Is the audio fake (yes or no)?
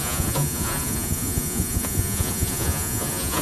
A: yes